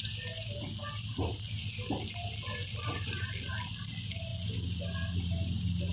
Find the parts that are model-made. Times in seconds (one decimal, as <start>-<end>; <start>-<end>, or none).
2.6-3.3